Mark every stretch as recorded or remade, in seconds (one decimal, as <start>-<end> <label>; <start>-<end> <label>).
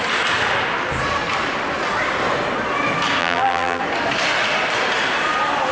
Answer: 0.0-3.2 recorded; 3.2-3.8 remade; 3.8-5.7 recorded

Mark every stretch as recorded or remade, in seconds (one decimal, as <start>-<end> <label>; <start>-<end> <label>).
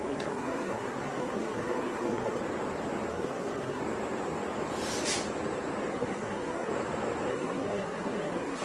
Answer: 0.0-2.4 remade; 2.4-3.1 recorded; 3.1-3.8 remade; 3.8-5.9 recorded; 5.9-6.7 remade; 6.7-7.3 recorded; 7.3-8.6 remade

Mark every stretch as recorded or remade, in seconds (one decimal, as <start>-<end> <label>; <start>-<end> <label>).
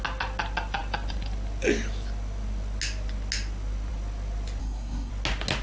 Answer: 0.0-4.6 recorded; 4.6-5.1 remade; 5.1-5.6 recorded